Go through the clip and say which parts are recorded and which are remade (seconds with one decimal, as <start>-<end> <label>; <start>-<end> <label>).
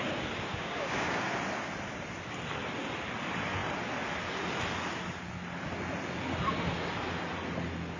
0.0-0.5 recorded; 0.5-1.2 remade; 1.2-8.0 recorded